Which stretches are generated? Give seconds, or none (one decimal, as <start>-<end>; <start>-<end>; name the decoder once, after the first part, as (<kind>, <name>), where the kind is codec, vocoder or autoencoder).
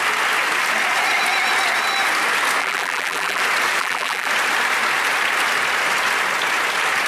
2.6-3.4 (vocoder, BigVGAN v2); 3.8-4.3